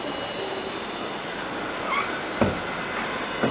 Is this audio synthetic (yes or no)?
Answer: no